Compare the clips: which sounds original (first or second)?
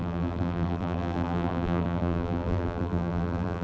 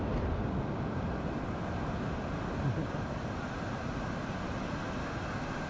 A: second